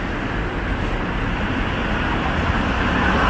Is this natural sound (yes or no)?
yes